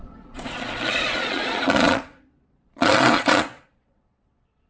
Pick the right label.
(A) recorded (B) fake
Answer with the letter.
B